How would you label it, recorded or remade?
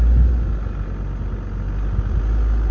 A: recorded